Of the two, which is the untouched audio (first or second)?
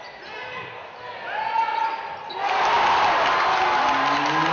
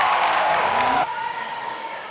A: first